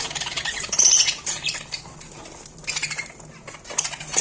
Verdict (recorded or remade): recorded